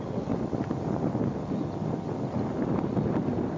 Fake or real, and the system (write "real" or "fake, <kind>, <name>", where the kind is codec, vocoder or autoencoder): real